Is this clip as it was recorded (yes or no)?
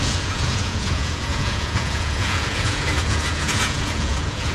no